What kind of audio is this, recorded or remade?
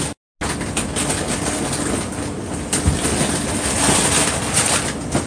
recorded